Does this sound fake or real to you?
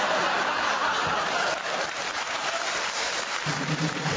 fake